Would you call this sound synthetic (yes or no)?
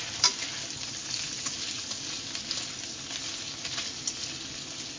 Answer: no